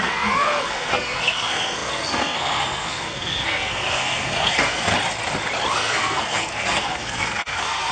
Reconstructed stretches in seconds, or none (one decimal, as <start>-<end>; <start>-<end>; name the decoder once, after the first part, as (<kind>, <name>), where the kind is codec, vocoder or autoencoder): 0.0-4.9 (codec, SNAC); 5.7-7.9